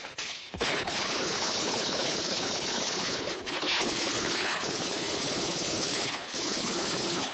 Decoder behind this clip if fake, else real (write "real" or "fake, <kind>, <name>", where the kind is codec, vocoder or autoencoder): fake, codec, HILCodec